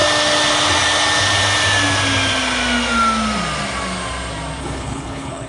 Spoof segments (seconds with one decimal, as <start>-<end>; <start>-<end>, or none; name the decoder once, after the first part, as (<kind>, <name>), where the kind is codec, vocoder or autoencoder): 4.6-5.5 (codec, HILCodec)

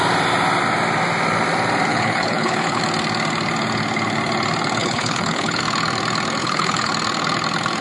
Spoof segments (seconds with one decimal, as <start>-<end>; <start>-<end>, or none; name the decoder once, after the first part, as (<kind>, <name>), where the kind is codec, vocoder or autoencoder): 1.9-2.8 (codec, HILCodec); 4.8-5.6; 6.4-6.9

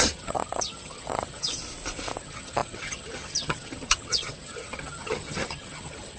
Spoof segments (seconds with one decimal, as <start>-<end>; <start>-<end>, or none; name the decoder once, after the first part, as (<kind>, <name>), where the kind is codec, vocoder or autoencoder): 0.0-1.6 (vocoder, HiFi-GAN); 2.2-6.2